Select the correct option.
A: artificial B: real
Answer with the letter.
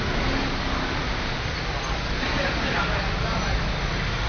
B